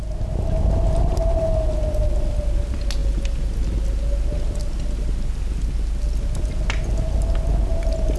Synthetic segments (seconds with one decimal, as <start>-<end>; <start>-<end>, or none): none